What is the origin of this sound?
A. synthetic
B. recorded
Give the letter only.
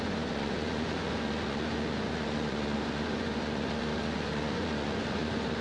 A